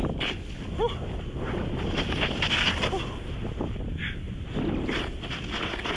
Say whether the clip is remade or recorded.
recorded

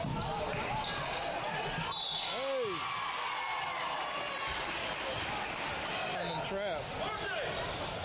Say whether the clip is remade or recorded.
recorded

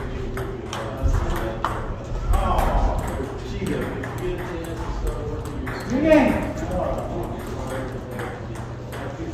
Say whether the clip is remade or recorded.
recorded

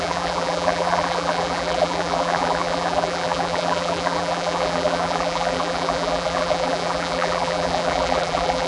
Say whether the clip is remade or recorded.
remade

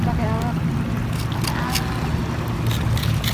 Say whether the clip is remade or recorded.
recorded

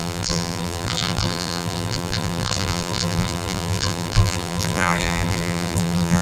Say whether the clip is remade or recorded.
remade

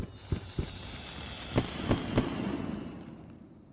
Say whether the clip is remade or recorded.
remade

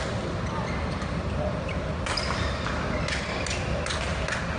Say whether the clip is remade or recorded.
recorded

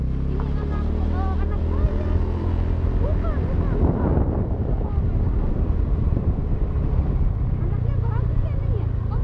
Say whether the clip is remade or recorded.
recorded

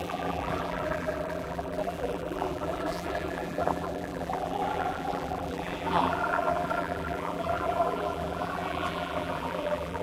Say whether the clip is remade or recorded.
remade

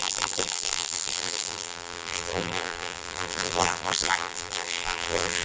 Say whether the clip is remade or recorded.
remade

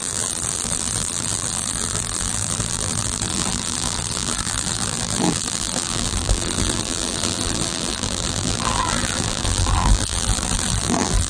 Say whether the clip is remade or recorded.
remade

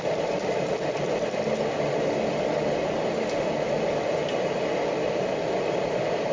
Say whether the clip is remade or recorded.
recorded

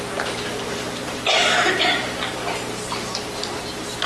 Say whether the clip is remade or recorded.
remade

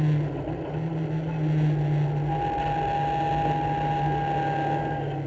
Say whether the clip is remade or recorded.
recorded